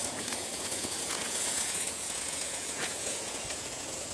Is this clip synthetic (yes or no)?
yes